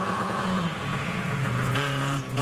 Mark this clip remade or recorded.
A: remade